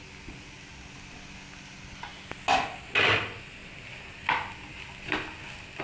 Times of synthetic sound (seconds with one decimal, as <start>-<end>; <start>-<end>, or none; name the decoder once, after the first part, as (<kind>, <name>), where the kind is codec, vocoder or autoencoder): none